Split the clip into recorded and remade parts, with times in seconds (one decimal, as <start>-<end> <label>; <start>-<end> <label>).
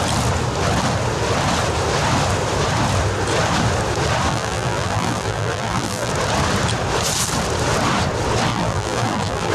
0.0-4.3 recorded; 4.3-6.1 remade; 6.1-8.5 recorded; 8.5-9.5 remade